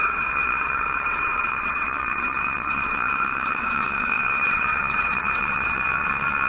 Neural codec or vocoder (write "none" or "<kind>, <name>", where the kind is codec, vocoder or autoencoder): vocoder, WaveNeXt